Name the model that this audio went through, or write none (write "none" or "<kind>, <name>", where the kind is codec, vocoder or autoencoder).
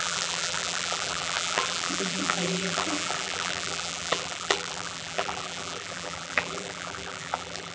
vocoder, BigVGAN v2